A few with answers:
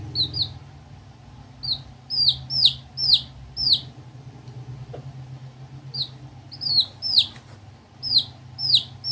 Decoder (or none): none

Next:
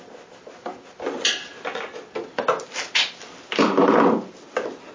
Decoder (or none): none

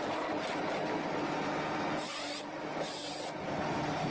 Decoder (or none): none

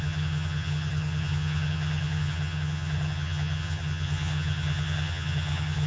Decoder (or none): vocoder, HiFi-GAN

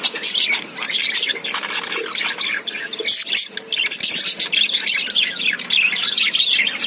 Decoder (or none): none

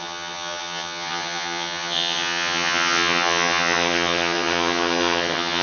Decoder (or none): vocoder, HiFi-GAN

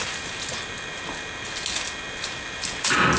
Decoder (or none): none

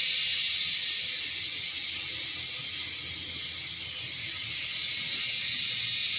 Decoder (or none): none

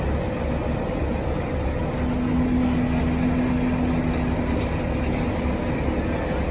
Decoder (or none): none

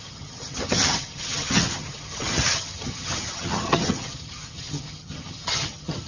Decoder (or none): vocoder, HiFi-GAN